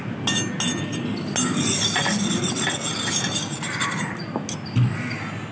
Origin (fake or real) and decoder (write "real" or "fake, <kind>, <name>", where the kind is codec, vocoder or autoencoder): real